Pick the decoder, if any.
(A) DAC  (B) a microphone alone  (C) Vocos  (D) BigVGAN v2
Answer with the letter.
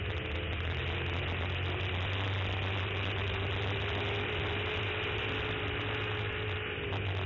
B